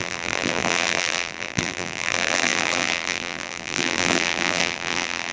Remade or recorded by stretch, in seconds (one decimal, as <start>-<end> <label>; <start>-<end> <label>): 0.0-5.3 remade